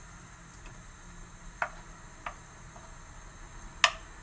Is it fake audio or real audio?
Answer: real